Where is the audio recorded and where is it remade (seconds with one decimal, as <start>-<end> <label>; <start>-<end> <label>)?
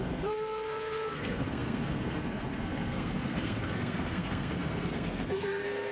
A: 0.0-5.9 remade